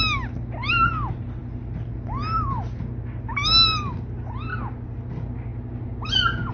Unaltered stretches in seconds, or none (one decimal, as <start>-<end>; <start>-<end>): 0.0-6.5